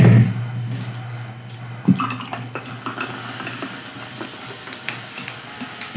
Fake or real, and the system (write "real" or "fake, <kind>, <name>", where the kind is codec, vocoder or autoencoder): real